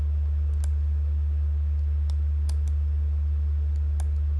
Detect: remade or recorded recorded